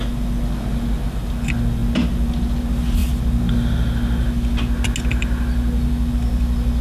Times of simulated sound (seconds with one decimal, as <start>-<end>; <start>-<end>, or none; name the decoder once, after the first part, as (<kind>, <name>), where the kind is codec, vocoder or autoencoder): none

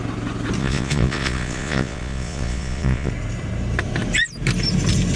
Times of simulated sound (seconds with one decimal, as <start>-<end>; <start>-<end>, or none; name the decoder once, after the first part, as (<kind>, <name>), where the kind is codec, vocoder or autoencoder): 0.6-3.1 (vocoder, Vocos)